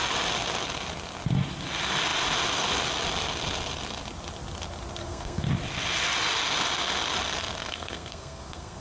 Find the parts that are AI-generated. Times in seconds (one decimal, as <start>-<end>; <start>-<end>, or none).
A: 5.0-5.5; 7.6-8.8